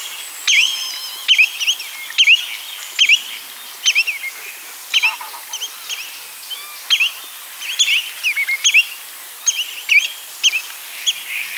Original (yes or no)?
yes